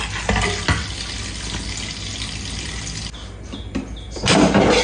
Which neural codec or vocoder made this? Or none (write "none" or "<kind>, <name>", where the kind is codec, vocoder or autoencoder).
none